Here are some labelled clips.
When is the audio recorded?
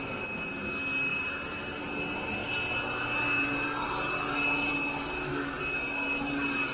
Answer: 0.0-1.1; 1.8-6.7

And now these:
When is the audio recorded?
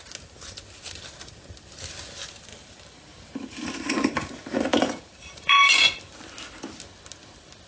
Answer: 0.0-2.5; 6.1-7.7